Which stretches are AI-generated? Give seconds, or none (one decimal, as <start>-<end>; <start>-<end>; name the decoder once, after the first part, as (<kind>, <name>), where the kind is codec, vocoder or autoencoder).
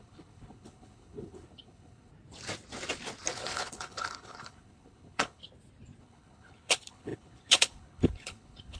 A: 0.0-2.1 (codec, HILCodec); 3.3-5.4; 6.0-8.8